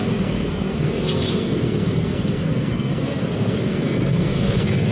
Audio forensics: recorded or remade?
remade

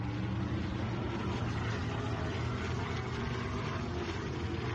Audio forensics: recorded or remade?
recorded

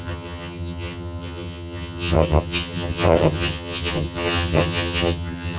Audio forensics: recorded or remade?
remade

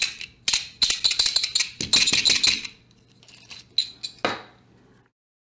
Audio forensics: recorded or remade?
recorded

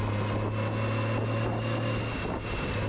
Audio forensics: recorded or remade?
recorded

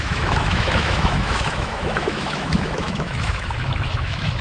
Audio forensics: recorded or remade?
remade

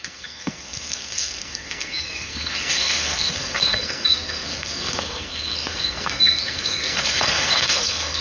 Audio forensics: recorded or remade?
remade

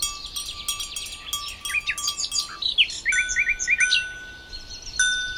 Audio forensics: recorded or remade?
recorded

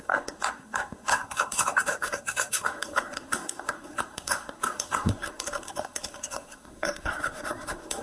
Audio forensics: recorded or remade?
remade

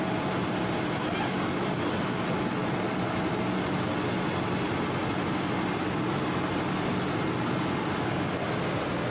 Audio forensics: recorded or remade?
recorded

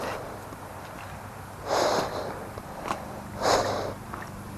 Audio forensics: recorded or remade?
recorded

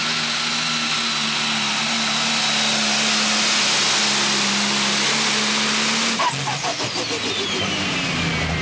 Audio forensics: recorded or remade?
recorded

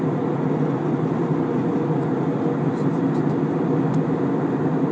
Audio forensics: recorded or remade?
recorded